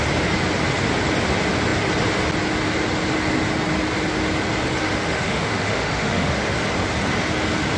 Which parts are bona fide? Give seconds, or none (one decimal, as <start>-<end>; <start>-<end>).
0.0-4.8; 6.4-7.8